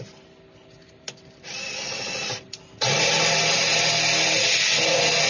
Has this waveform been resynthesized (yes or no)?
no